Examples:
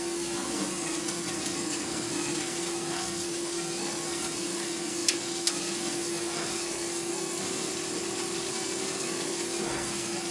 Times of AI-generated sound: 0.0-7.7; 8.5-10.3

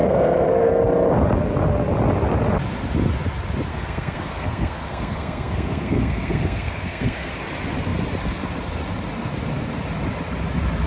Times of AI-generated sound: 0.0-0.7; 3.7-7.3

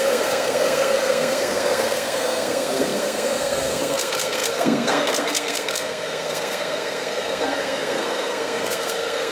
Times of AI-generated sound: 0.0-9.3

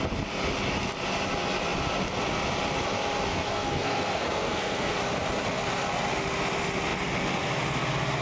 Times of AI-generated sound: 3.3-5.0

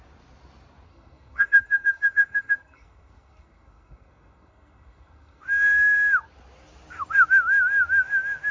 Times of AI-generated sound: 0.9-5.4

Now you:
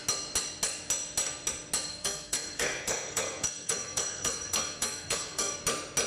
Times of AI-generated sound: 1.9-5.6

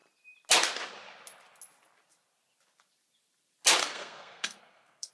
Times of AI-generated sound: 3.8-5.1

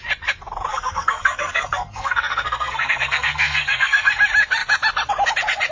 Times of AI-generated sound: 0.7-4.1